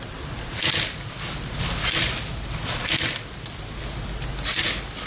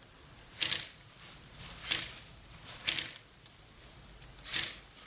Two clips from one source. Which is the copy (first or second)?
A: second